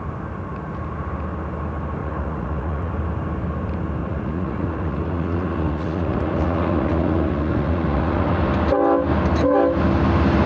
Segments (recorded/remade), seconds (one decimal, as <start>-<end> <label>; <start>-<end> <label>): 0.0-2.0 recorded; 2.0-2.9 remade; 2.9-4.0 recorded; 4.0-8.4 remade; 8.4-10.5 recorded

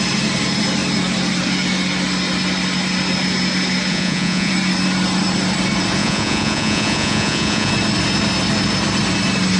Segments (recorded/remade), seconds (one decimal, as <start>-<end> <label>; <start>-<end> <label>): 0.0-3.9 recorded; 3.9-4.5 remade; 4.5-6.0 recorded; 6.0-7.7 remade; 7.7-9.6 recorded

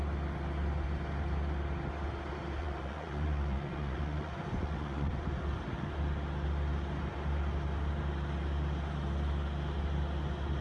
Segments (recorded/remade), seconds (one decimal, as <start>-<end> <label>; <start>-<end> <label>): 0.0-2.6 recorded; 2.6-5.1 remade; 5.1-10.6 recorded

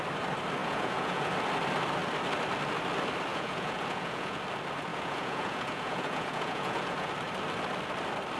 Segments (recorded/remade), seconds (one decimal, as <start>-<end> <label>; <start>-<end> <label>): 0.0-0.6 recorded; 0.6-1.3 remade; 1.3-3.3 recorded; 3.3-4.4 remade; 4.4-4.9 recorded; 4.9-7.1 remade; 7.1-8.4 recorded

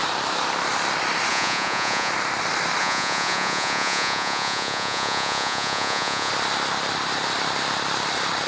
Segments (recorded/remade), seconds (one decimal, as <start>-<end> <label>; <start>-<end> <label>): 0.0-1.3 recorded; 1.3-2.1 remade; 2.1-2.8 recorded; 2.8-6.3 remade; 6.3-8.5 recorded

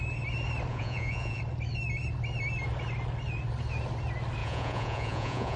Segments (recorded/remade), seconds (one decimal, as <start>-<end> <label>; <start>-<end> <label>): 0.0-0.7 recorded; 0.7-1.4 remade; 1.4-4.4 recorded; 4.4-5.6 remade

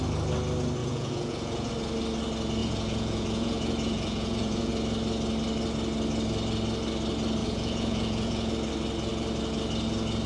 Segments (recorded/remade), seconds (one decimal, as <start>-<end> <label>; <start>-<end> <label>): 0.0-0.8 recorded; 0.8-1.7 remade; 1.7-2.6 recorded; 2.6-4.7 remade; 4.7-7.4 recorded; 7.4-8.5 remade; 8.5-10.3 recorded

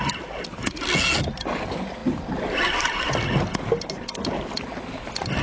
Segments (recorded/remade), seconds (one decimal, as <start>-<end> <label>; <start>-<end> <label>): 0.0-5.4 recorded